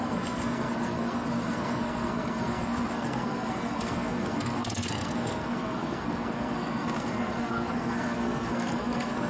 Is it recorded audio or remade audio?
remade